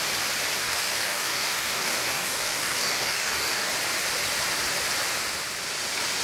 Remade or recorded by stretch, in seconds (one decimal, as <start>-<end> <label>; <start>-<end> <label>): 0.0-0.6 recorded; 0.6-3.7 remade; 3.7-6.2 recorded